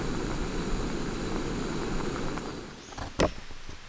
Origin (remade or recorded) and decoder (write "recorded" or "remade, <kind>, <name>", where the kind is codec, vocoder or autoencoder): recorded